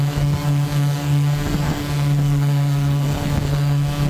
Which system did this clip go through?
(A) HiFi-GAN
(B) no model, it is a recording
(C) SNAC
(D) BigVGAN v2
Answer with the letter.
C